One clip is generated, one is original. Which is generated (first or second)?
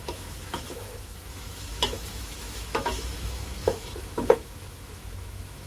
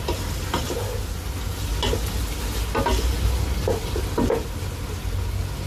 first